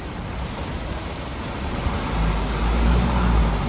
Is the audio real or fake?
real